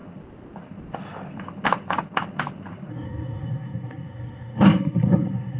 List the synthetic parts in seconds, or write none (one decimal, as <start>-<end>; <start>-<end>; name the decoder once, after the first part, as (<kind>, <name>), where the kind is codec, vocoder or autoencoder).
2.9-5.6 (codec, SNAC)